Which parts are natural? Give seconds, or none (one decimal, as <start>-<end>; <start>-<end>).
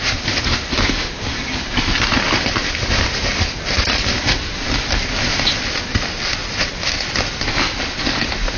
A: 0.0-8.6